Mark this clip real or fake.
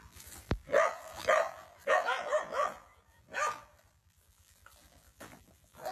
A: fake